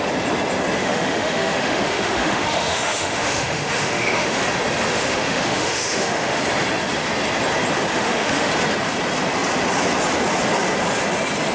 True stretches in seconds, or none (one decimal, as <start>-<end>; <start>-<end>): 0.0-0.8; 4.4-4.9; 6.4-7.9; 8.5-11.5